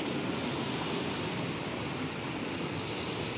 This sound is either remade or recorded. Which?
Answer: recorded